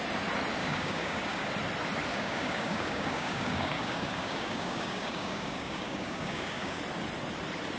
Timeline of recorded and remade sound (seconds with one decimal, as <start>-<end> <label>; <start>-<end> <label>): 0.0-0.6 recorded; 0.6-1.5 remade; 1.5-2.1 recorded; 2.1-6.8 remade; 6.8-7.8 recorded